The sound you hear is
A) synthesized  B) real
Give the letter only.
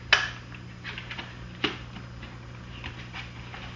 B